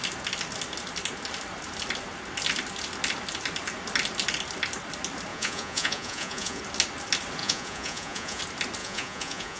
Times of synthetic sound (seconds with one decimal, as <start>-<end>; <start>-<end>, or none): 5.3-6.6; 7.4-8.4; 8.8-9.6